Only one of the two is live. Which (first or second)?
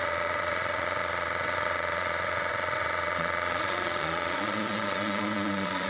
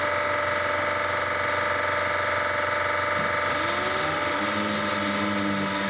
second